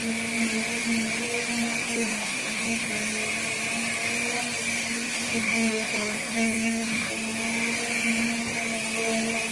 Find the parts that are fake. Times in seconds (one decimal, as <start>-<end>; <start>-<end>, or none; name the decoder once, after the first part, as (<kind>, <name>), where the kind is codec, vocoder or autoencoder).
1.8-2.9 (codec, SNAC); 4.8-7.1